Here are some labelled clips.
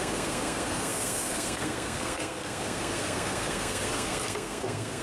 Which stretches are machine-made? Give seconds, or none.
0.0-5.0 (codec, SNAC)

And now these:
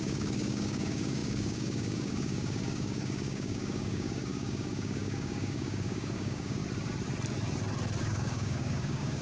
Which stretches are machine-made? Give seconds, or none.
0.0-6.6 (codec, DAC); 8.0-9.2

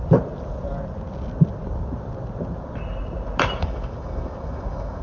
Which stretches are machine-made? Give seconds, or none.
3.6-5.0 (autoencoder, DAC-VAE)

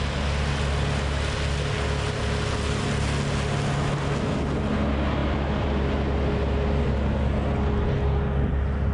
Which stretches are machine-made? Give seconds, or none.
none

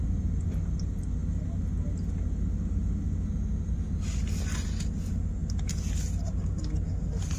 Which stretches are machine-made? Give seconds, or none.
none

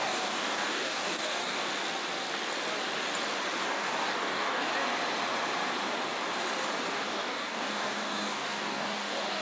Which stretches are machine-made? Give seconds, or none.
0.0-1.7 (codec, DAC); 3.6-4.7; 6.9-9.4

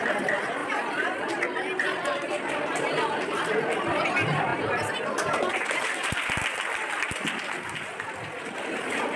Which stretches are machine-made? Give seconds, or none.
0.6-1.4 (vocoder, BigVGAN v2)

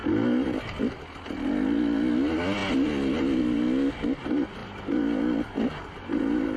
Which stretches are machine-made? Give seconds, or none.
none